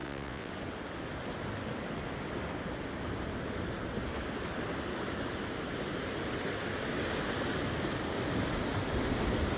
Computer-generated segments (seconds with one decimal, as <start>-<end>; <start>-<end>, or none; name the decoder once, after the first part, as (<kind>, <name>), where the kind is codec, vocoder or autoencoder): 0.0-0.5 (vocoder, WaveNeXt)